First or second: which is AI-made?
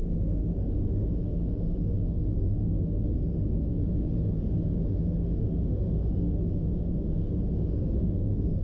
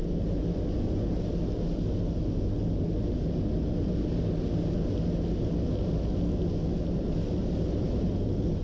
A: first